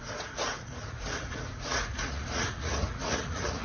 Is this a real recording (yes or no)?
no